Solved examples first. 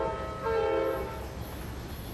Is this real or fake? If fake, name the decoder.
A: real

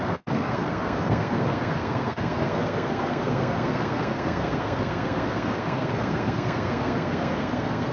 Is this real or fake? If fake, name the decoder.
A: fake, codec, SNAC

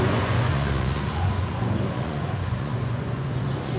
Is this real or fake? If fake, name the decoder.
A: fake, vocoder, Vocos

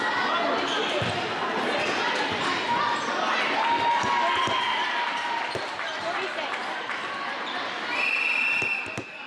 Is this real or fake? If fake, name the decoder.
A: real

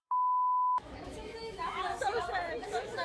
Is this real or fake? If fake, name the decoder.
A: fake, autoencoder, DAC-VAE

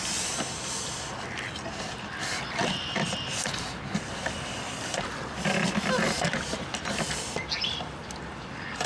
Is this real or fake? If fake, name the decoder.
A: real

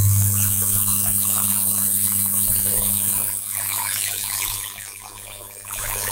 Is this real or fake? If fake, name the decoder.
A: fake, autoencoder, DAC-VAE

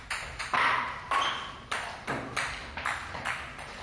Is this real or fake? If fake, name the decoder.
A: real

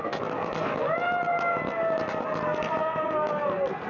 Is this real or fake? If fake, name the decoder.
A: real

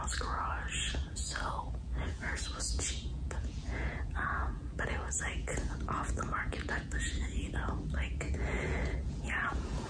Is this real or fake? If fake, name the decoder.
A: fake, vocoder, Vocos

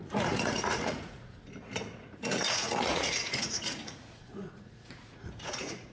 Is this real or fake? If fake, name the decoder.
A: fake, vocoder, Vocos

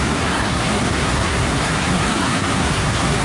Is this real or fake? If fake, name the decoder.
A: fake, codec, SNAC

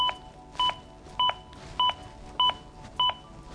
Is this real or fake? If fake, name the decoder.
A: real